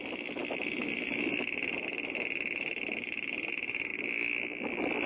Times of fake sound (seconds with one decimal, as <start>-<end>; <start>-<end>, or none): none

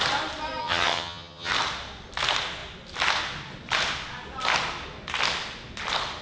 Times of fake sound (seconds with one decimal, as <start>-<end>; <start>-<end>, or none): 0.6-1.5

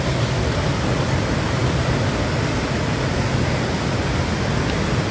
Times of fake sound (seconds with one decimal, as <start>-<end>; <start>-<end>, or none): none